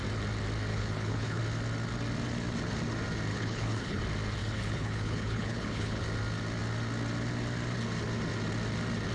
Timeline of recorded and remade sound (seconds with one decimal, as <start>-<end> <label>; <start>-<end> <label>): 0.0-0.7 recorded; 0.7-1.4 remade; 1.4-3.3 recorded; 3.3-4.0 remade; 4.0-4.4 recorded; 4.4-6.0 remade; 6.0-9.1 recorded